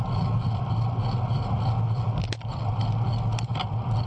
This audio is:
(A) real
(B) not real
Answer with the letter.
A